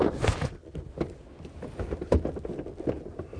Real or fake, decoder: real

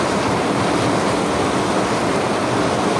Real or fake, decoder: real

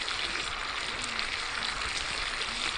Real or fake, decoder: real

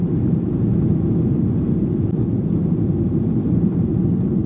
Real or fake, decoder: real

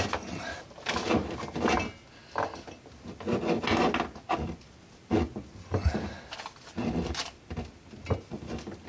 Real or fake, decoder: real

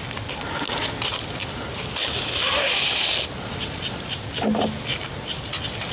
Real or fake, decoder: real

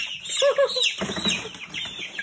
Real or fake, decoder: real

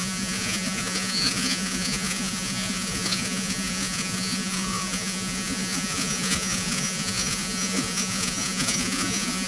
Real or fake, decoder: fake, vocoder, Vocos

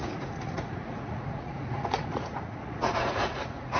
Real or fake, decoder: fake, vocoder, Vocos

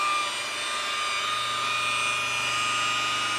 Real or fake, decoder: real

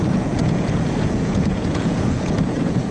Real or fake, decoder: fake, vocoder, Vocos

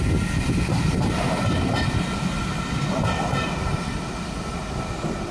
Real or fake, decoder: real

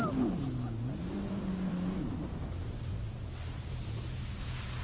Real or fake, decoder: real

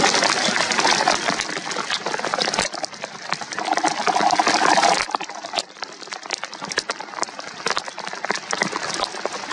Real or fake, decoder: real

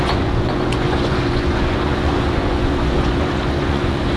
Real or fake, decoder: fake, vocoder, Vocos